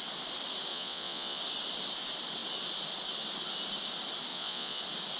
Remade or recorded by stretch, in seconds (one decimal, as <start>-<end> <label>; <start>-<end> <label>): 0.0-0.7 recorded; 0.7-1.4 remade; 1.4-4.3 recorded; 4.3-4.8 remade; 4.8-5.2 recorded